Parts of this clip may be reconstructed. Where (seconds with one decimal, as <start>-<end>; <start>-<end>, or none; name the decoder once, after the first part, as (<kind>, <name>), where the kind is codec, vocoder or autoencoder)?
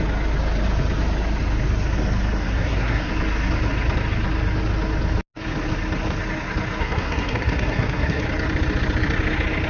2.4-3.1 (codec, SNAC); 6.8-8.2